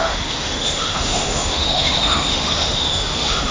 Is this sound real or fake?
fake